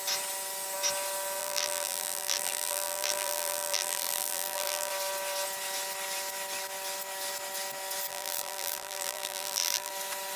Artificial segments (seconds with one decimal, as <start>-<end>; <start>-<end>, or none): 1.4-4.9; 8.1-9.9